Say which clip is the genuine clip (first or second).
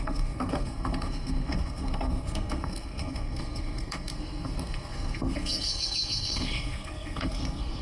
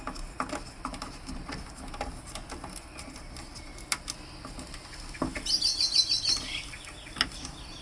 second